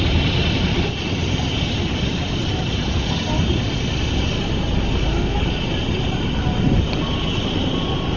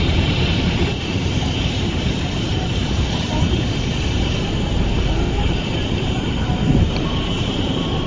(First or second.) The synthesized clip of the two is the second